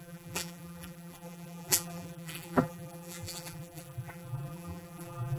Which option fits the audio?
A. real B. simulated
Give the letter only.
B